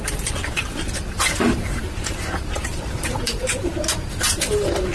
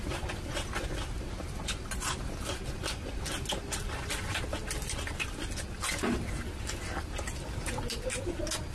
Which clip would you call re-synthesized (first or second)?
first